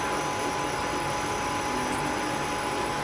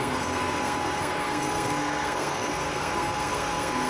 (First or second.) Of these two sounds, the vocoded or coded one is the second